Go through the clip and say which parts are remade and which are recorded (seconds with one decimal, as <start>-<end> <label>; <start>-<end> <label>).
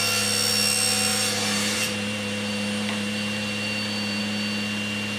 0.0-1.1 recorded; 1.1-4.2 remade; 4.2-5.2 recorded